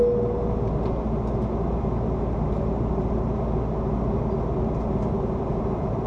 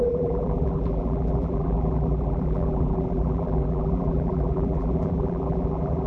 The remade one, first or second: second